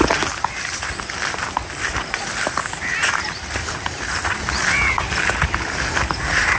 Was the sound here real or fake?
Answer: real